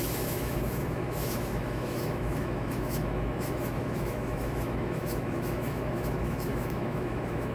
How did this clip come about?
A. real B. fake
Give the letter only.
B